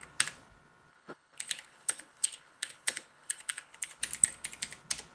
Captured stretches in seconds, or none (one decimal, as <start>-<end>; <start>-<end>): 0.0-0.9; 4.0-5.1